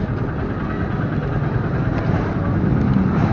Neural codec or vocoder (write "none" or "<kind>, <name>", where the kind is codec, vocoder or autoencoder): none